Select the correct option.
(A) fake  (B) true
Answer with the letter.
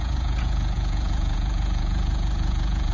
A